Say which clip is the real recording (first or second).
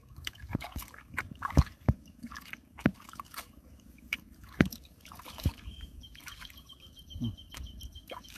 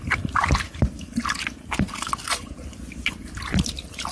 second